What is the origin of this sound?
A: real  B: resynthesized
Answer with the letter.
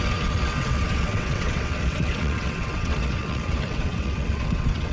B